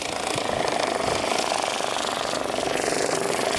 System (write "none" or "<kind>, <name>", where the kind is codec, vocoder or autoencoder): none